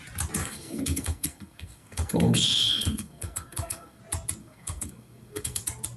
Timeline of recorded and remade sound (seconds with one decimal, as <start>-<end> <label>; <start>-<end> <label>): 0.0-0.4 recorded; 0.4-4.0 remade; 4.0-4.4 recorded; 4.4-5.6 remade; 5.6-6.0 recorded